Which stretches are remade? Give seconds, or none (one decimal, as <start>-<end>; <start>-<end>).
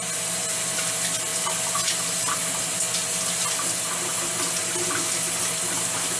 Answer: none